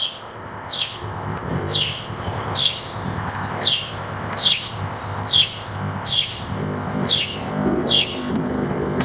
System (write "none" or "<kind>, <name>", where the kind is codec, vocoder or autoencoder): codec, ZipCodec